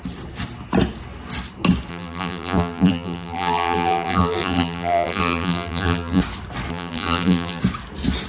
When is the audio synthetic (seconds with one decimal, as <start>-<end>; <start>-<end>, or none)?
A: 1.9-6.2; 6.7-7.6